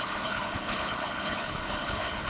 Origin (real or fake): fake